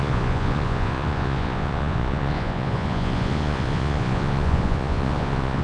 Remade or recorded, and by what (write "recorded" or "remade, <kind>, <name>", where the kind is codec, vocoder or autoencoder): remade, vocoder, Vocos